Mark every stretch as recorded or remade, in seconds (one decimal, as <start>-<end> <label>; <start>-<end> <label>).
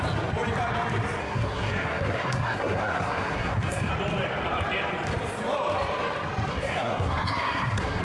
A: 0.0-1.2 recorded; 1.2-3.9 remade; 3.9-6.5 recorded; 6.5-8.0 remade